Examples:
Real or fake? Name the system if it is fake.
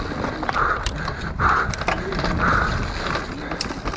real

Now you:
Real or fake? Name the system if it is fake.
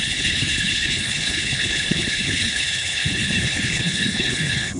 fake, codec, HILCodec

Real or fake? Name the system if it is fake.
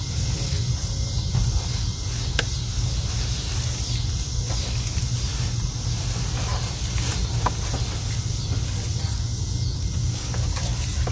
real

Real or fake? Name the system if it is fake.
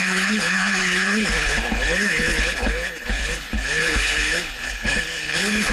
fake, codec, HILCodec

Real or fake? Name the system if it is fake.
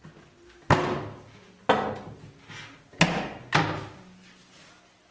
real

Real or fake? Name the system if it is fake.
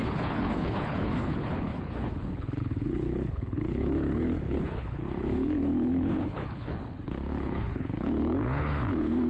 fake, codec, HILCodec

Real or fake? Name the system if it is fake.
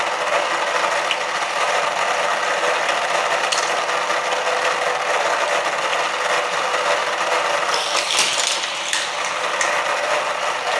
real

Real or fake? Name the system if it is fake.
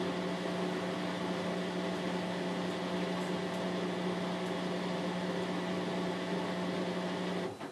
real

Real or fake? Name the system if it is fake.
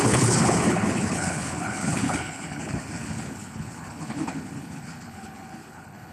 fake, codec, HILCodec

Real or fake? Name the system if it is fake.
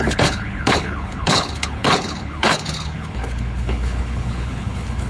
fake, codec, HILCodec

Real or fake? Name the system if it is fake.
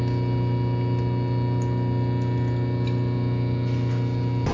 real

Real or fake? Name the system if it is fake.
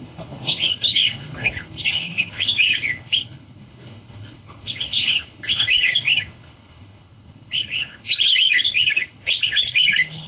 fake, codec, HILCodec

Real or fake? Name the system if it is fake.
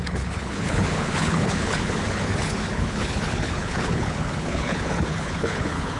fake, codec, HILCodec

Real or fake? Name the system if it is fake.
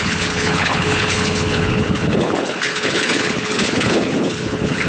fake, codec, HILCodec